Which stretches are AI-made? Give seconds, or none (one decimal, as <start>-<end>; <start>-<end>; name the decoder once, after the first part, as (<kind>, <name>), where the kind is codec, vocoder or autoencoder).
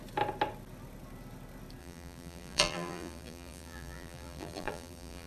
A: 1.8-5.3 (vocoder, BigVGAN v2)